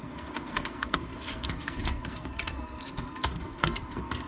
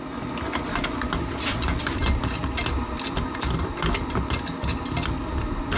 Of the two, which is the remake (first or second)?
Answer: first